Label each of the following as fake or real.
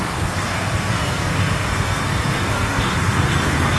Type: fake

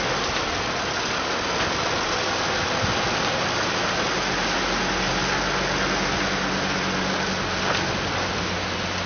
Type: real